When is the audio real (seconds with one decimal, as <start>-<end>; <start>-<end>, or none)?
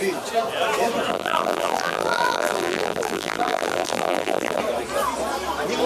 0.0-1.1; 4.6-5.9